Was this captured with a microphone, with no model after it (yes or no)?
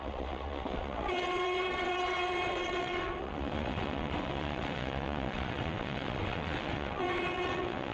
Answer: no